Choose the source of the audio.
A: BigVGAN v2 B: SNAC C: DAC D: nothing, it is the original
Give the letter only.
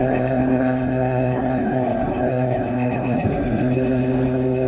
B